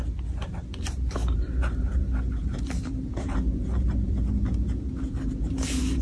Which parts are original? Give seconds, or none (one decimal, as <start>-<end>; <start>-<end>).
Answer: 0.0-1.2; 2.0-2.4